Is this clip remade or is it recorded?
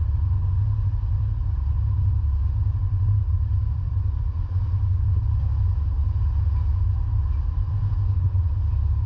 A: recorded